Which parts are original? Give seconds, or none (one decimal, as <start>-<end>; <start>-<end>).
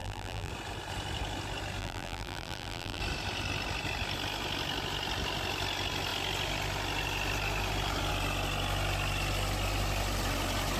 0.5-1.8; 3.0-10.8